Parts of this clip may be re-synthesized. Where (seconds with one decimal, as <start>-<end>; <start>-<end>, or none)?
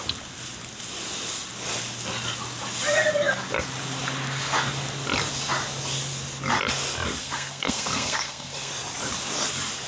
7.2-8.7